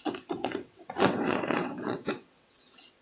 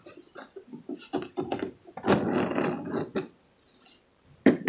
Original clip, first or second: second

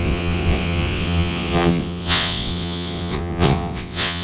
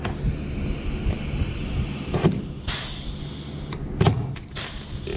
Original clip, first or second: second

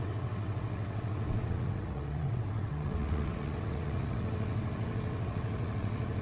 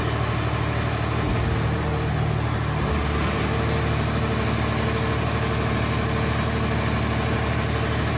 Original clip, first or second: second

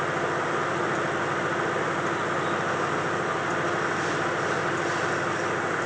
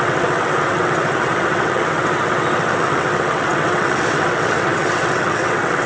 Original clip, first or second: first